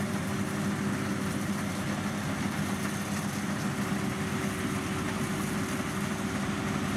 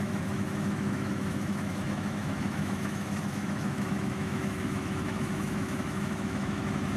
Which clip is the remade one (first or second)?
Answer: second